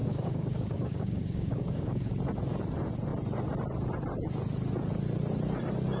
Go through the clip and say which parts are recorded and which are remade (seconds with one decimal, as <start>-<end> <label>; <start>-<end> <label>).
0.0-2.1 remade; 2.1-6.0 recorded